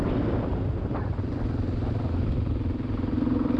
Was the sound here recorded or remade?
recorded